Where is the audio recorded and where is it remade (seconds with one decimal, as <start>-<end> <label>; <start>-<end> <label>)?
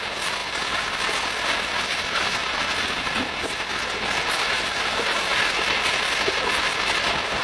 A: 0.0-7.4 recorded